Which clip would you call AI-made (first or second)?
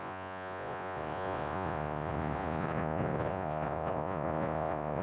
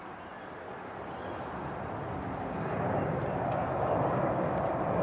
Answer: first